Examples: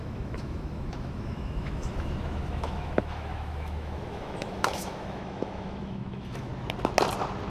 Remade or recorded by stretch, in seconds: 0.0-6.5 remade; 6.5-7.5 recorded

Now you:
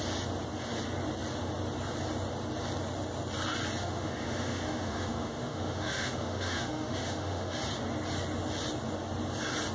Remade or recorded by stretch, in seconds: 0.0-3.8 recorded; 3.8-7.6 remade; 7.6-9.7 recorded

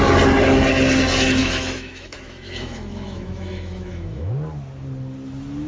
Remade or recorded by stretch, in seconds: 0.0-1.4 recorded; 1.4-4.3 remade; 4.3-5.7 recorded

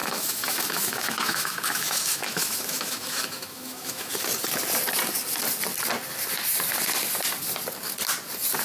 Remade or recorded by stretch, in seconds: 0.0-4.1 remade; 4.1-8.6 recorded

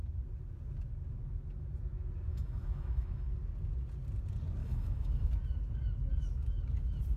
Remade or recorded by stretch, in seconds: 0.0-2.3 recorded; 2.3-3.3 remade; 3.3-4.6 recorded; 4.6-5.3 remade; 5.3-7.2 recorded

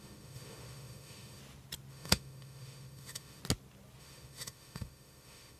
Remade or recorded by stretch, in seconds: 0.0-1.4 remade; 1.4-1.9 recorded; 1.9-3.4 remade; 3.4-4.0 recorded; 4.0-5.6 remade

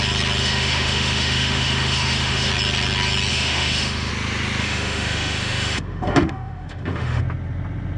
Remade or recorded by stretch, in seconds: 0.0-0.4 recorded; 0.4-2.5 remade; 2.5-3.3 recorded; 3.3-4.1 remade; 4.1-4.6 recorded; 4.6-7.2 remade; 7.2-8.0 recorded

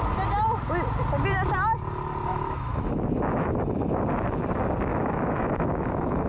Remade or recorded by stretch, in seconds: 0.0-2.3 recorded; 2.3-4.0 remade; 4.0-4.9 recorded; 4.9-6.3 remade